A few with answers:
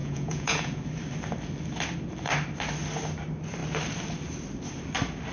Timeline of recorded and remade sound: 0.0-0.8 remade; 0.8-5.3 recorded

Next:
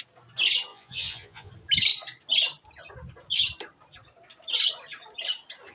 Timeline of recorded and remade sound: 0.0-0.7 recorded; 0.7-1.5 remade; 1.5-5.7 recorded

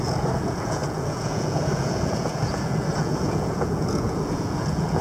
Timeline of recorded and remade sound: 0.0-5.0 remade

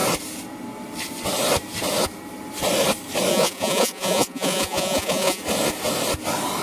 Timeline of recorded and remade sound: 0.0-3.3 recorded; 3.3-5.4 remade; 5.4-6.6 recorded

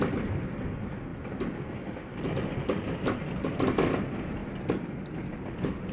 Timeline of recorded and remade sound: 0.0-5.9 recorded

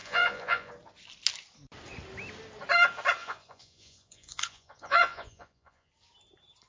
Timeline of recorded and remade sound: 0.0-0.7 remade; 0.7-3.2 recorded; 3.2-5.9 remade; 5.9-6.7 recorded